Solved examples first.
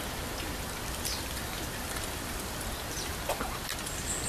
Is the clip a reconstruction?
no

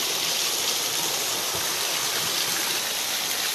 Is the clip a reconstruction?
no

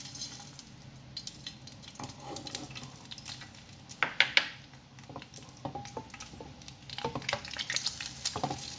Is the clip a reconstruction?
no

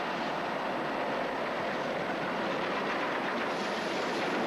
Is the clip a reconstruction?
no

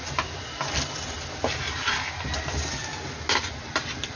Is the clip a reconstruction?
no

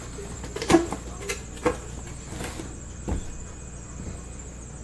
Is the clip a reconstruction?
no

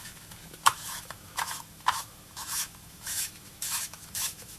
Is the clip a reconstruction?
yes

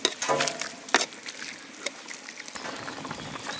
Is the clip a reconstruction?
no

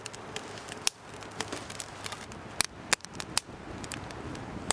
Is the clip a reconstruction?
no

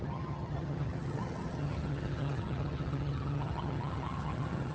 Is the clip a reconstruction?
yes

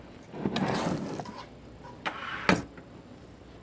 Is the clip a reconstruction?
no